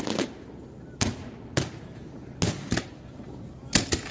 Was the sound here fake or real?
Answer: real